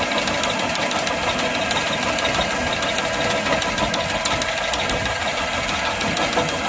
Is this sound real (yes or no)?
yes